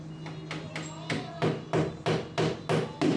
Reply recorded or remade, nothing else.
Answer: recorded